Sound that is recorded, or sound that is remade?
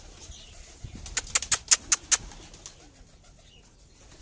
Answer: recorded